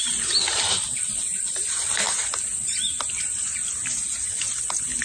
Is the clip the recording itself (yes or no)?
yes